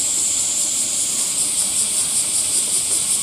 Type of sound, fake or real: fake